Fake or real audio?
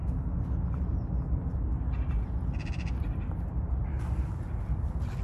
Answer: real